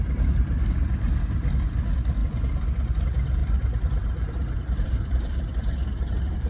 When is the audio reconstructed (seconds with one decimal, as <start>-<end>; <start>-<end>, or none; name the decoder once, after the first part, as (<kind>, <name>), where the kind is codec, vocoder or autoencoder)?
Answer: 3.4-6.5 (vocoder, BigVGAN v2)